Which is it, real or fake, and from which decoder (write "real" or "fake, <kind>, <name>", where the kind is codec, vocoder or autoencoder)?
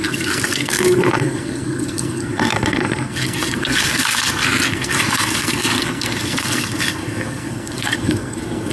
fake, codec, SNAC